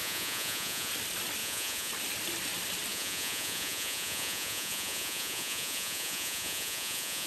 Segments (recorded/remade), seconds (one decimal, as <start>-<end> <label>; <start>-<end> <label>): 0.0-0.9 remade; 0.9-1.4 recorded; 1.4-1.9 remade; 1.9-2.9 recorded; 2.9-7.3 remade